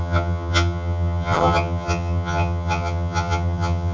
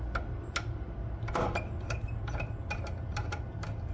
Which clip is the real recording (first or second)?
second